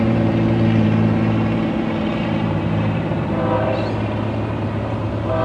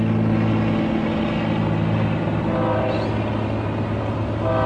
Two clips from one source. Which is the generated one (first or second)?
first